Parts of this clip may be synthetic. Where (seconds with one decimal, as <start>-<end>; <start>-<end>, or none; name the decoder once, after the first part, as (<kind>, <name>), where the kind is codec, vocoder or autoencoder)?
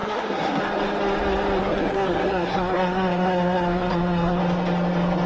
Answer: 0.0-0.6 (codec, SNAC); 1.6-4.4